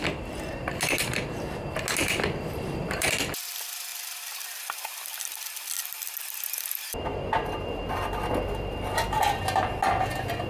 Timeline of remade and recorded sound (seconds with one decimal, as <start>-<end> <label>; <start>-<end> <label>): 0.0-2.0 recorded; 2.0-3.1 remade; 3.1-10.5 recorded